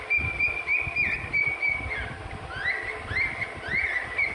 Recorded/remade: recorded